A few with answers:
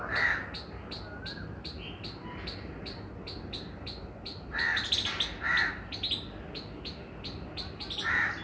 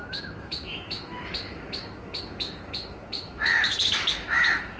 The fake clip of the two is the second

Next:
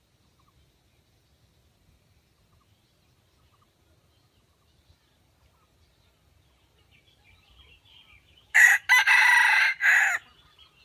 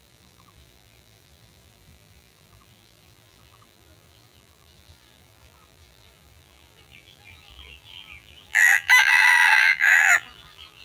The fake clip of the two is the second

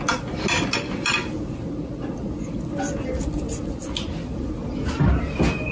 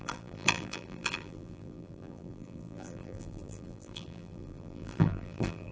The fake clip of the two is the second